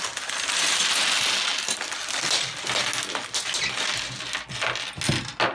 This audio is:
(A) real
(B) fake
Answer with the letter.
A